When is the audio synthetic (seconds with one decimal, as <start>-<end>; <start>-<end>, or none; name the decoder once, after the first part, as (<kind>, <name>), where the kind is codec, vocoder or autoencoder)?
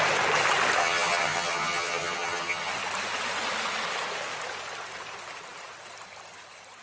0.8-2.7 (vocoder, HiFi-GAN)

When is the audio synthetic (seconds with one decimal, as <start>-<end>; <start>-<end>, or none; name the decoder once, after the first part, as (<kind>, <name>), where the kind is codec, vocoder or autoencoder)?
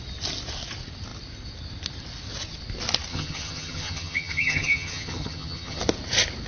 3.1-5.8 (vocoder, HiFi-GAN)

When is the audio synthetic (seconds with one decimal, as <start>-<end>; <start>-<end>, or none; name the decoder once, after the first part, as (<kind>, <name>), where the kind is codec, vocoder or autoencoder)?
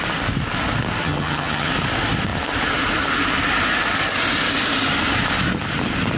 1.0-1.7 (vocoder, HiFi-GAN)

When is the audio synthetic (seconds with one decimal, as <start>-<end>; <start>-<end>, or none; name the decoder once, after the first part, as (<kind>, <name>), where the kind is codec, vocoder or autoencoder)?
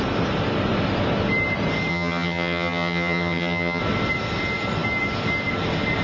1.9-3.8 (vocoder, HiFi-GAN)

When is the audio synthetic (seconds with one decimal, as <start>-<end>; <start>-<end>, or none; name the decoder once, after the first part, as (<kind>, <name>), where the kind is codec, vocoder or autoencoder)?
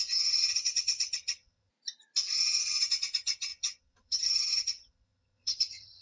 0.0-1.7 (vocoder, HiFi-GAN); 2.2-6.0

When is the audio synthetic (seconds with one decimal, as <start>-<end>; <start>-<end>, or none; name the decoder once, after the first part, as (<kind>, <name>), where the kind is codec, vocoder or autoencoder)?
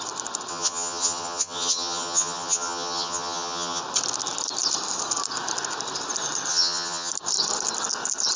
0.5-3.8 (vocoder, HiFi-GAN); 6.5-7.1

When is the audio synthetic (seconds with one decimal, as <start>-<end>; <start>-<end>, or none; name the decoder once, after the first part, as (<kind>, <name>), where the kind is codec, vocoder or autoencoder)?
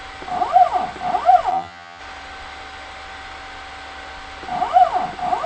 1.5-2.0 (vocoder, HiFi-GAN)